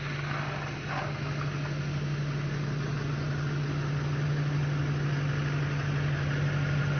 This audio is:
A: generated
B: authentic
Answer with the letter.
B